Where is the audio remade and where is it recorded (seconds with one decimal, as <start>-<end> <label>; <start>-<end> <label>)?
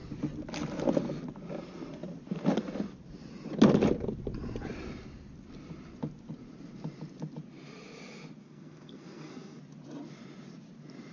0.0-8.4 recorded; 8.4-9.6 remade; 9.6-11.1 recorded